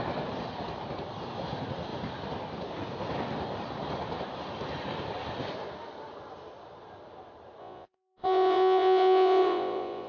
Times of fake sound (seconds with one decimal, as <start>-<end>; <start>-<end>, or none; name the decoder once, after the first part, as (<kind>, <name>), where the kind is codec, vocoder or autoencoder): 7.6-10.1 (vocoder, Vocos)